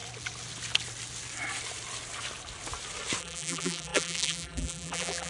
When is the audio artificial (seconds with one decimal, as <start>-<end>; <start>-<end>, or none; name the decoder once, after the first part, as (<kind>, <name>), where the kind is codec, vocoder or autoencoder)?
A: 3.2-5.3 (vocoder, BigVGAN v2)